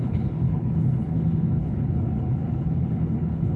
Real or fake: fake